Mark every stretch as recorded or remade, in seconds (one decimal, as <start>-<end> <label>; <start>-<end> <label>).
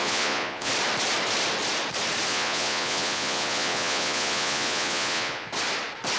0.0-0.7 remade; 0.7-2.3 recorded; 2.3-5.5 remade; 5.5-6.2 recorded